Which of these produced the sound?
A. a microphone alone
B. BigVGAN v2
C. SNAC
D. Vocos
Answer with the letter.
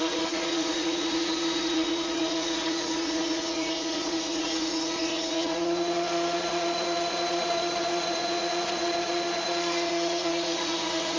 D